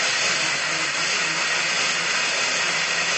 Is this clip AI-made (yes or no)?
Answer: no